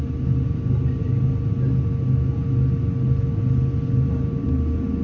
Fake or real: real